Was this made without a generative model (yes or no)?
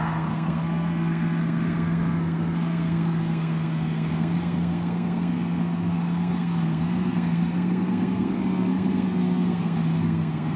no